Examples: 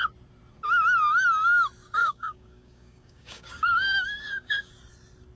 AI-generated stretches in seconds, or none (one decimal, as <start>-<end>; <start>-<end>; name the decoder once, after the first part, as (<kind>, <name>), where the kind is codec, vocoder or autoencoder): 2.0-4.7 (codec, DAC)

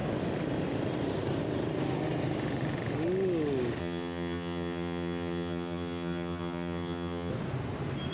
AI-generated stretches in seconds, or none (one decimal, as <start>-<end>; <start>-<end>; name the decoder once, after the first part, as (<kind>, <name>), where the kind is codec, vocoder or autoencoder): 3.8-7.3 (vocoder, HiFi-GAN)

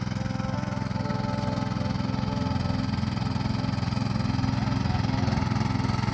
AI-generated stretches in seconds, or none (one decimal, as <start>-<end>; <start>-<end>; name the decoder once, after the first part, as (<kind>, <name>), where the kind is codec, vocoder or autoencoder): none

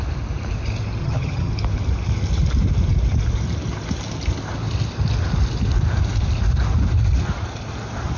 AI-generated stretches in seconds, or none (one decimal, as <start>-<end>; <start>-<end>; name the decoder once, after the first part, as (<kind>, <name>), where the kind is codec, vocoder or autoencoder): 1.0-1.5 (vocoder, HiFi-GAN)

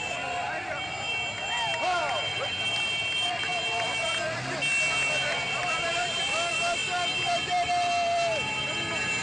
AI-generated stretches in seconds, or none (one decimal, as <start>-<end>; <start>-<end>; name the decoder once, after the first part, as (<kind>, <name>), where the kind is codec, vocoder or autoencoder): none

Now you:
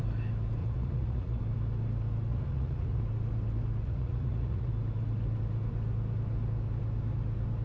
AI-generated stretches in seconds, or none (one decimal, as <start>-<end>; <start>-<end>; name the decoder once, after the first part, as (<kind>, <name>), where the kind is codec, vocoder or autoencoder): 0.6-1.4 (vocoder, Vocos); 2.3-3.0; 3.8-4.7